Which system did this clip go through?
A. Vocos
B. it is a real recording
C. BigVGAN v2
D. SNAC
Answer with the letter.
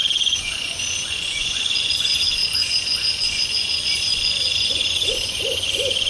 A